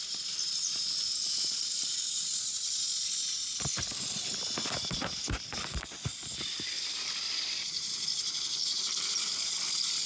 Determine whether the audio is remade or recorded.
recorded